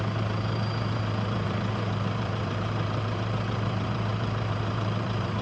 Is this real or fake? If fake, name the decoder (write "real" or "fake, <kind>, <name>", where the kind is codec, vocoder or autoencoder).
fake, vocoder, BigVGAN v2